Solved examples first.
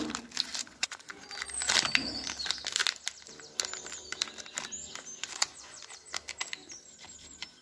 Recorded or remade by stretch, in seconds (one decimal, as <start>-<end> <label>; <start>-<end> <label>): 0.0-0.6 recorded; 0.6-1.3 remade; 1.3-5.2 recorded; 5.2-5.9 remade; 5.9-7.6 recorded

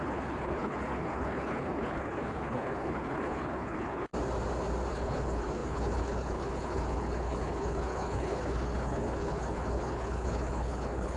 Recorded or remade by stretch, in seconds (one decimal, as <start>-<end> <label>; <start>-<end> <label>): 0.0-4.1 remade; 4.1-4.9 recorded; 4.9-11.2 remade

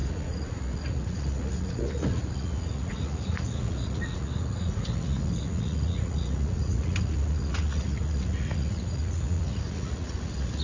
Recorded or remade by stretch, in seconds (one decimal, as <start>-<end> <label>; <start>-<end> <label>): 0.0-10.6 remade

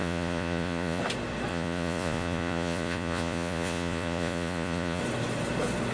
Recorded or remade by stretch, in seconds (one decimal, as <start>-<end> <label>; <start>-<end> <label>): 0.0-1.0 remade; 1.0-1.5 recorded; 1.5-5.0 remade; 5.0-5.9 recorded

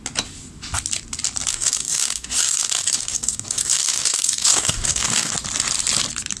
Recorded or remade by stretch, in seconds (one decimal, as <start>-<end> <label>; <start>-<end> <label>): 0.0-1.5 recorded; 1.5-5.3 remade; 5.3-6.4 recorded

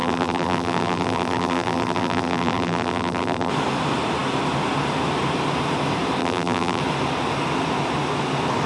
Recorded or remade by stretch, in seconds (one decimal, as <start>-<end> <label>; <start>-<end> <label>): 0.0-3.5 remade; 3.5-6.2 recorded; 6.2-6.8 remade; 6.8-8.7 recorded

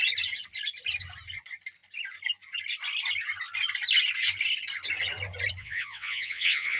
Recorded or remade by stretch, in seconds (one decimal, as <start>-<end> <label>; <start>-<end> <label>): 0.0-5.6 recorded; 5.6-6.8 remade

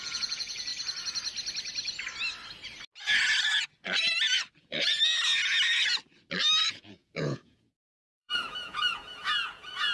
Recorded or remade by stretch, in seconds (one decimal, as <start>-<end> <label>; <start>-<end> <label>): 0.0-0.7 remade; 0.7-4.6 recorded; 4.6-5.0 remade; 5.0-6.7 recorded; 6.7-9.9 remade